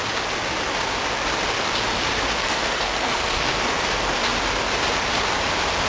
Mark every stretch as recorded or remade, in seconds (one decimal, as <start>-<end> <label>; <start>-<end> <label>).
0.0-2.4 recorded; 2.4-3.5 remade; 3.5-5.9 recorded